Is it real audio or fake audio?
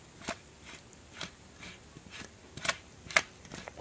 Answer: real